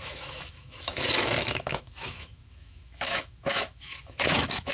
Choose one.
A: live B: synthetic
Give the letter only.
B